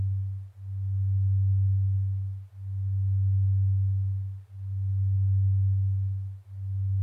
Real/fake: real